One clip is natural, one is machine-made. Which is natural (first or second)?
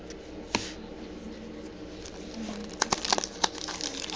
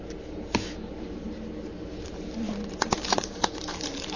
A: first